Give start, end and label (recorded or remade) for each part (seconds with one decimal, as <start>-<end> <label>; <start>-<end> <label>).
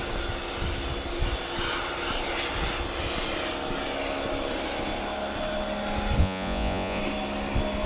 0.0-6.2 recorded; 6.2-7.0 remade; 7.0-7.9 recorded